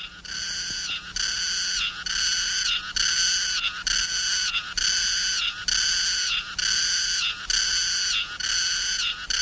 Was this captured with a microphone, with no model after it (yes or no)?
yes